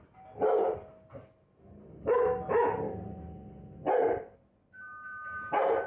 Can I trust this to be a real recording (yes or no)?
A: yes